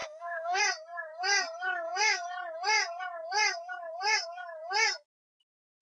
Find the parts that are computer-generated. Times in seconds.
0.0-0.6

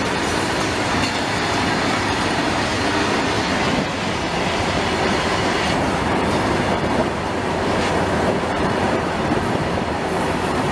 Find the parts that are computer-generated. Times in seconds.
0.0-2.7; 5.8-7.0; 8.4-10.7

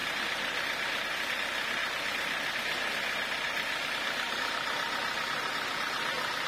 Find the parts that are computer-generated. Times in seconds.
none

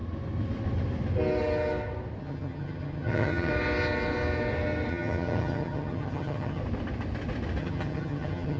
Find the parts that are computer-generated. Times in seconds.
2.2-3.5; 4.9-6.6; 7.6-8.6

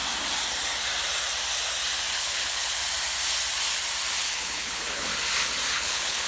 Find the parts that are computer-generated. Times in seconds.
2.2-2.8; 4.2-5.1; 5.7-6.3